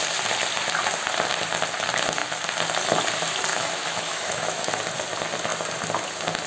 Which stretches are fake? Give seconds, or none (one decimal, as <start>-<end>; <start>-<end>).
3.5-4.7